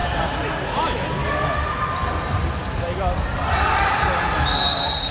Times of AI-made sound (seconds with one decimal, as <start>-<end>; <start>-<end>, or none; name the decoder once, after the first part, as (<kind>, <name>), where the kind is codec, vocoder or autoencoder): 0.0-0.5 (vocoder, BigVGAN v2)